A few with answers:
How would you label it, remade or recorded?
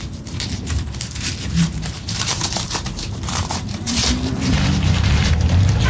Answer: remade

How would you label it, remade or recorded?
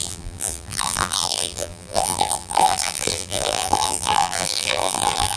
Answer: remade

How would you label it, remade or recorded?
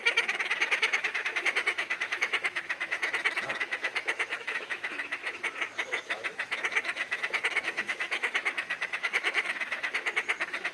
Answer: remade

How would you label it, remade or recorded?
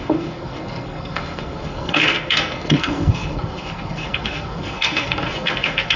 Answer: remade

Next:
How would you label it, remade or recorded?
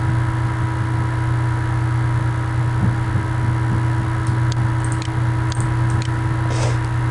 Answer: recorded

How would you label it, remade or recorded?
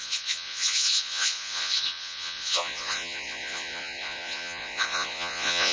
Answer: remade